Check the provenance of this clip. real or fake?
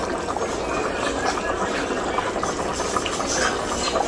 real